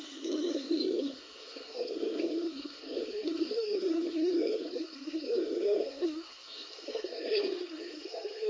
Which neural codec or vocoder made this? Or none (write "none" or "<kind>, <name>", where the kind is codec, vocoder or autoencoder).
codec, SNAC